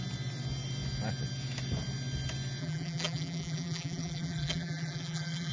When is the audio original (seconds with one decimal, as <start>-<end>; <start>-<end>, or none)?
0.0-2.6

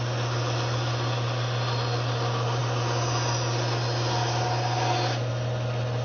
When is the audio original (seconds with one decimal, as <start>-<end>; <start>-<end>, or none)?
0.0-6.0

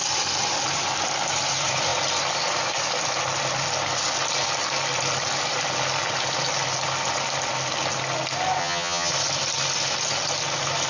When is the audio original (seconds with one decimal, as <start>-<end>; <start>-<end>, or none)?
0.0-8.6; 9.1-10.9

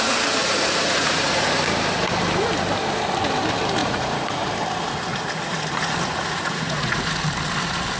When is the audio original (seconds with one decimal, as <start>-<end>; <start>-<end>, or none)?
0.0-0.4; 1.5-3.8; 4.5-5.1; 7.2-8.0

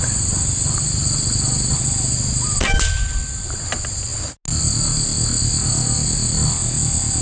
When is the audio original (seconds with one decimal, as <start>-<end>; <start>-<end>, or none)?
0.0-7.2

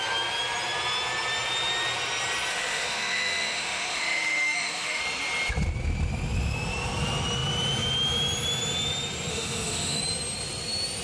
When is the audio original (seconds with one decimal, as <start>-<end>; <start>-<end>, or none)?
0.0-2.5; 5.0-9.3; 10.0-11.0

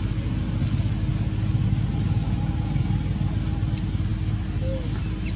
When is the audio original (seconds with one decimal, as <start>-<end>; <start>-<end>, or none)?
0.0-5.4